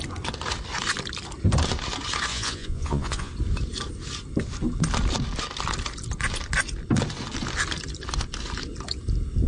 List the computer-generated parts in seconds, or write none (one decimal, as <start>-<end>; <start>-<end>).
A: 2.3-3.3